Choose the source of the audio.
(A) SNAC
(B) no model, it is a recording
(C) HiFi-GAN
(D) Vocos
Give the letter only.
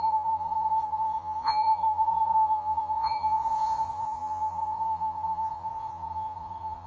D